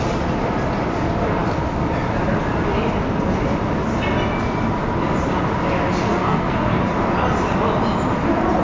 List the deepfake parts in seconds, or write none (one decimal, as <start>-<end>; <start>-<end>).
6.0-6.9

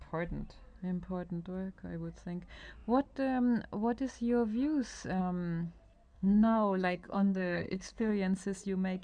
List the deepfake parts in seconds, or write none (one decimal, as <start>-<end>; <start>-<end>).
6.1-8.1

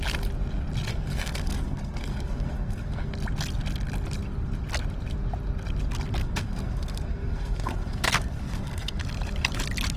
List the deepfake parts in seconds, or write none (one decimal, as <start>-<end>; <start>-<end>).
0.9-3.1; 6.2-9.0

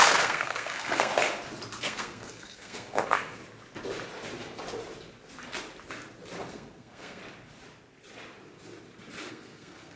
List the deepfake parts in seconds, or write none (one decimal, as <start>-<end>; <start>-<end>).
0.0-1.1; 1.8-3.4; 6.5-7.2; 9.3-10.0